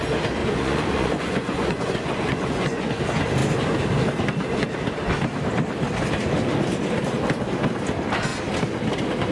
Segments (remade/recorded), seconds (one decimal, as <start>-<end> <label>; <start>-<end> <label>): 0.0-0.4 recorded; 0.4-3.0 remade; 3.0-9.3 recorded

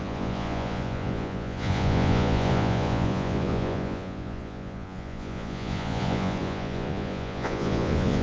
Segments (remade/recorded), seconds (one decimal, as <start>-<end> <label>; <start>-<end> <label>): 0.0-8.2 remade

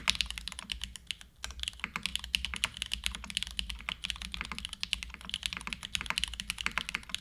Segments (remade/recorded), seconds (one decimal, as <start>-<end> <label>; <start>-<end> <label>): 0.0-7.2 recorded

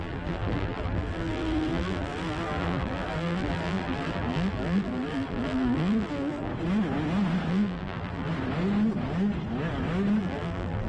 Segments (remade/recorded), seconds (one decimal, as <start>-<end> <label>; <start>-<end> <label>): 0.0-6.5 remade; 6.5-7.5 recorded; 7.5-8.3 remade; 8.3-10.2 recorded; 10.2-10.9 remade

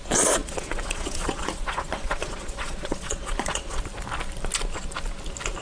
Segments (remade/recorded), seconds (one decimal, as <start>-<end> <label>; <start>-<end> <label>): 0.0-0.4 recorded; 0.4-3.8 remade; 3.8-5.6 recorded